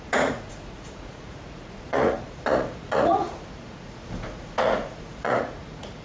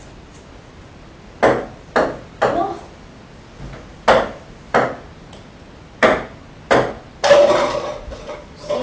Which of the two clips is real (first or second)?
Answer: second